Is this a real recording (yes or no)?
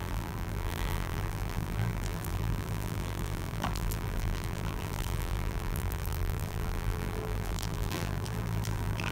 no